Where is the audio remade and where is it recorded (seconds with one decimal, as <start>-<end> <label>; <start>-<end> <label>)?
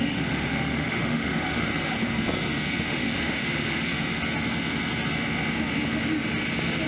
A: 0.0-1.7 remade; 1.7-2.9 recorded; 2.9-3.9 remade; 3.9-6.9 recorded